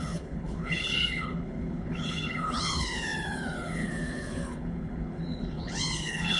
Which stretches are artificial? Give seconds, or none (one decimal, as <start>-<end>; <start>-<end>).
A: 0.0-6.4